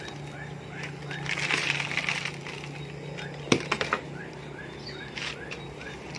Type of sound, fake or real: real